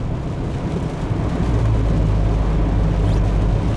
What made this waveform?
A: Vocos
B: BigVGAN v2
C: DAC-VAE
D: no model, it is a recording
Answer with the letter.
D